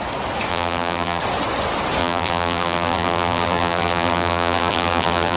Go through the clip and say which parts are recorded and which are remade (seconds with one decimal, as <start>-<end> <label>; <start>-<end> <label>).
0.0-0.5 recorded; 0.5-1.2 remade; 1.2-2.0 recorded; 2.0-5.4 remade

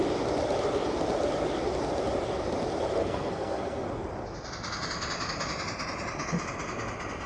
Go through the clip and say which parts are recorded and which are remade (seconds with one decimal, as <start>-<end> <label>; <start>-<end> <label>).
0.0-3.0 recorded; 3.0-3.8 remade; 3.8-7.3 recorded

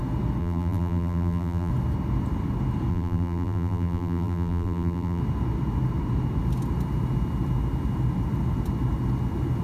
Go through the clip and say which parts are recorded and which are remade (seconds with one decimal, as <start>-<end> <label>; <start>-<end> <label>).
0.0-0.4 recorded; 0.4-1.7 remade; 1.7-2.9 recorded; 2.9-5.2 remade; 5.2-9.6 recorded

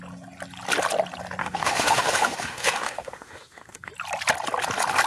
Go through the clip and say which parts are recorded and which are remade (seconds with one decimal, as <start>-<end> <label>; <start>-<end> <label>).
0.0-1.4 recorded; 1.4-3.9 remade; 3.9-5.1 recorded

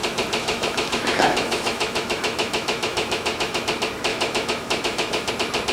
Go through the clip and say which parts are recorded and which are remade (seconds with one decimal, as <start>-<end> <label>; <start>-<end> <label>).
0.0-0.4 recorded; 0.4-3.6 remade; 3.6-4.1 recorded; 4.1-5.3 remade; 5.3-5.7 recorded